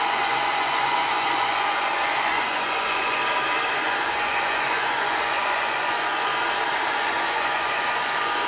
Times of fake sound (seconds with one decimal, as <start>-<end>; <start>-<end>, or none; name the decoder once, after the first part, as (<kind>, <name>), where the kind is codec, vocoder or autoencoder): 0.0-3.2 (vocoder, Vocos); 3.7-6.3; 6.9-8.5

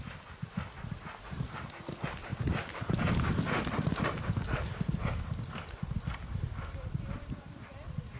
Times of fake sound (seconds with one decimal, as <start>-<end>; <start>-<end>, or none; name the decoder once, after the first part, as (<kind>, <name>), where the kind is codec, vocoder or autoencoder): none

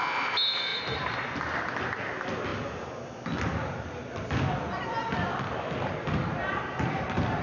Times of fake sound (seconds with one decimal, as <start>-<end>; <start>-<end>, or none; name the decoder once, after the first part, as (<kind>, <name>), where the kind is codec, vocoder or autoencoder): none

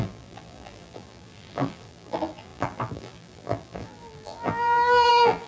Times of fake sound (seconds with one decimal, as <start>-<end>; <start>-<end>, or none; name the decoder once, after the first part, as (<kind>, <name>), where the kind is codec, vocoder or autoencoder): 0.0-5.5 (vocoder, BigVGAN v2)

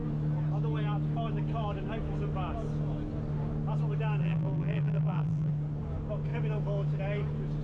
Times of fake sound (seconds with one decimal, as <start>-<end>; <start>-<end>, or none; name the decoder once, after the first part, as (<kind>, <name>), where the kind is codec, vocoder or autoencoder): 4.2-5.5 (vocoder, BigVGAN v2)

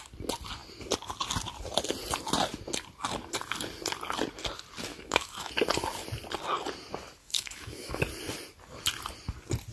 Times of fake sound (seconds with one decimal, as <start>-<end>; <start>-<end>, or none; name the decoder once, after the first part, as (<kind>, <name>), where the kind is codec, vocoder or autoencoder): 4.9-5.5 (autoencoder, DAC-VAE); 7.2-8.0